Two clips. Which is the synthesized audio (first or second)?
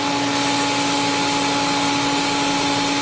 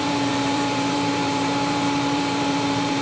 second